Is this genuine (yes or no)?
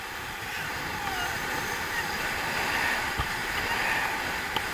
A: yes